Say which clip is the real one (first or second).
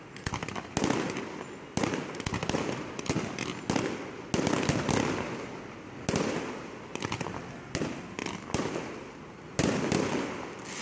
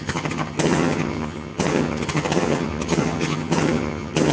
first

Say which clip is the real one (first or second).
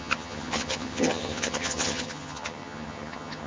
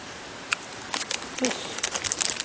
second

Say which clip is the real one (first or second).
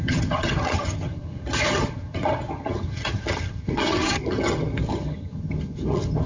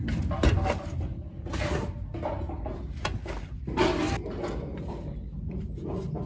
second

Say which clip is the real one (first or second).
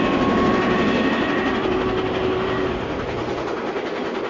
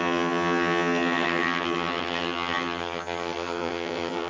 first